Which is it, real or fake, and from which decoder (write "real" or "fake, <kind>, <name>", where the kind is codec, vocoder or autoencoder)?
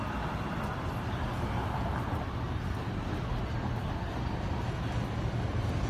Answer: real